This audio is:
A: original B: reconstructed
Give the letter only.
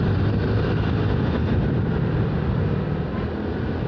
A